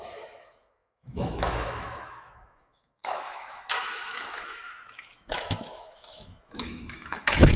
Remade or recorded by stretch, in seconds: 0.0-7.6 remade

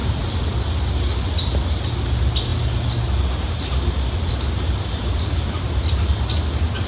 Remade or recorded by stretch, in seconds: 0.0-6.9 recorded